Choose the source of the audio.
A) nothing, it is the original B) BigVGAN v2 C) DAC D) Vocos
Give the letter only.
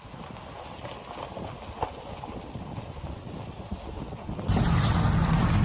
A